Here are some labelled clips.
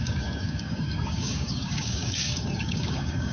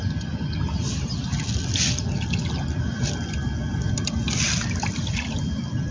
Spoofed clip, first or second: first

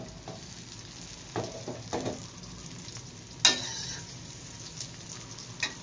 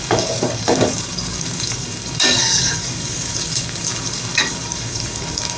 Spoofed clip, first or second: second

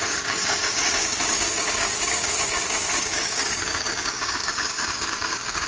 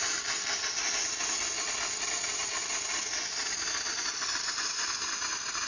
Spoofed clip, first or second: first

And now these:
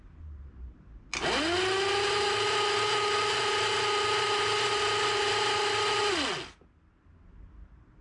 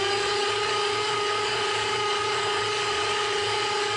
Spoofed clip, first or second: second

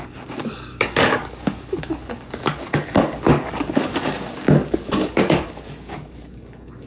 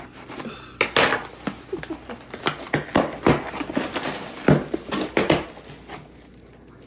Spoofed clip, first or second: first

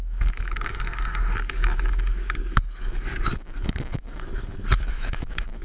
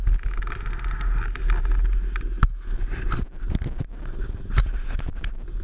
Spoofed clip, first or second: first